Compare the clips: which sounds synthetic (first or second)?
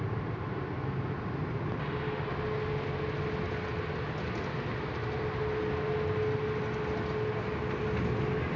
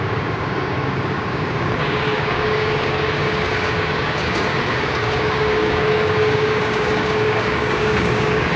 second